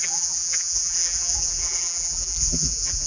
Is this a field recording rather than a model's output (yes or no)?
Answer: no